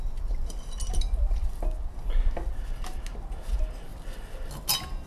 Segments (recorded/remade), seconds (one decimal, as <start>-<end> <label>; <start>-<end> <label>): 0.0-5.1 recorded